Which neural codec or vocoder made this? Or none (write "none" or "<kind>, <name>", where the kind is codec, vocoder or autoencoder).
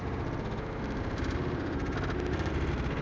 none